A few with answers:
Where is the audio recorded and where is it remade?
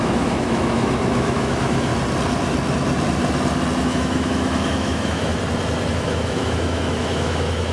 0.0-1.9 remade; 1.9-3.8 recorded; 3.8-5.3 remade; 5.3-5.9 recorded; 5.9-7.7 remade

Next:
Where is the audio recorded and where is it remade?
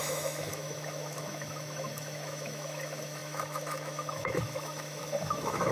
0.0-5.7 remade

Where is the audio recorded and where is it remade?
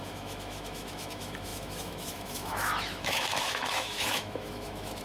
0.0-5.0 remade